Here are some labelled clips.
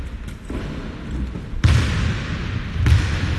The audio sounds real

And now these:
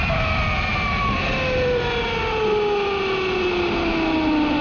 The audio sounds real